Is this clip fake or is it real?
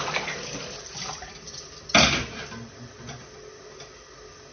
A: real